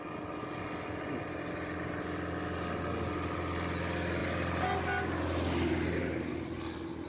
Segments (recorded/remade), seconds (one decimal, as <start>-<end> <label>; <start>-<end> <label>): 0.0-7.1 recorded